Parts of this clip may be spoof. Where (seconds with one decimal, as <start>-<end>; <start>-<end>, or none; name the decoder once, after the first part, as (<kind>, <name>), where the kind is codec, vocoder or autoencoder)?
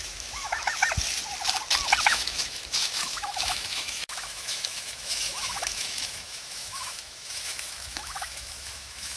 0.0-0.8 (autoencoder, DAC-VAE); 2.0-9.2